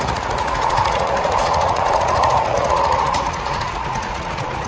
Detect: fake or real fake